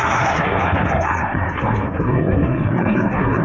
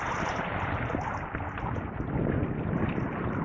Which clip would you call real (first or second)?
second